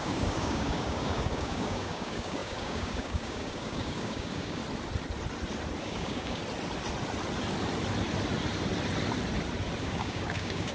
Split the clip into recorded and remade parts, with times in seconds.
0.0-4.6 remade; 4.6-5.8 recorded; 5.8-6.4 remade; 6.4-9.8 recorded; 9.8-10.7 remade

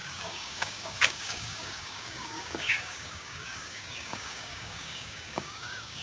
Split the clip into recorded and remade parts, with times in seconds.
0.0-6.0 remade

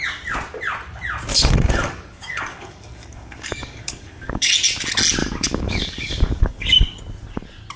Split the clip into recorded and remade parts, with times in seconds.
0.0-1.3 recorded; 1.3-4.5 remade; 4.5-5.2 recorded; 5.2-7.0 remade; 7.0-7.8 recorded

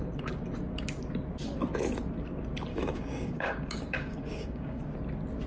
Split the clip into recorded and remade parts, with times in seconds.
0.0-2.7 recorded; 2.7-4.8 remade; 4.8-5.5 recorded